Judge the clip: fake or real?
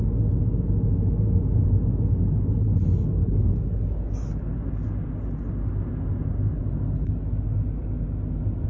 real